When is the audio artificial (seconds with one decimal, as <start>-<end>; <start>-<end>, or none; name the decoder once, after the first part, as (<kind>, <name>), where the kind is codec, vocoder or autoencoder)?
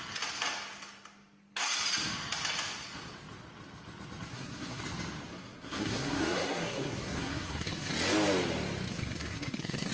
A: 4.3-4.8 (codec, SNAC); 5.3-7.9; 8.9-9.9